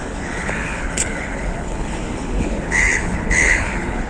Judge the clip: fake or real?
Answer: fake